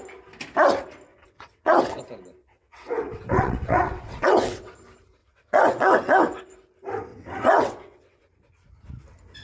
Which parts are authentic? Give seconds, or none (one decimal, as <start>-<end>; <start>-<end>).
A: 0.0-1.1; 2.0-2.4; 4.7-5.2; 6.4-7.1; 8.2-9.4

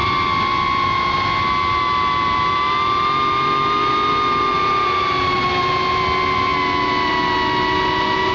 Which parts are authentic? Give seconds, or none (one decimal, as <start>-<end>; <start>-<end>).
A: 0.0-8.3